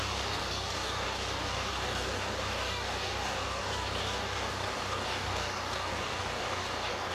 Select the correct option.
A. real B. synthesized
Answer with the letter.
B